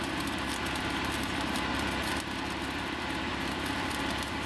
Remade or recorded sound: remade